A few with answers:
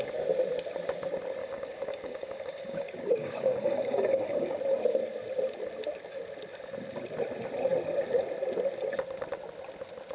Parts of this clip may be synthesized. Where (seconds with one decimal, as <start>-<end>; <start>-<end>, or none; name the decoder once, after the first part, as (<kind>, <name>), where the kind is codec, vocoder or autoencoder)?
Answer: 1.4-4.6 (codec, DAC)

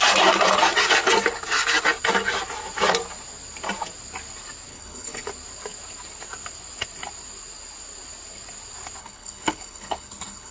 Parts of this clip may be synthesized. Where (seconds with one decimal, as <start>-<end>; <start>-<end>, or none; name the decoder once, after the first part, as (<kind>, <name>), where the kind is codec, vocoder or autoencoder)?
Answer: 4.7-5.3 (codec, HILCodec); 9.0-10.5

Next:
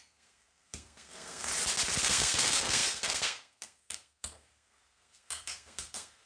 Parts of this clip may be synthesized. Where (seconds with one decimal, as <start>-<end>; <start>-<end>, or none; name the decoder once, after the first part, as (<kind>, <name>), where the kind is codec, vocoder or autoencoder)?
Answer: 0.0-1.5 (codec, SNAC); 2.0-6.3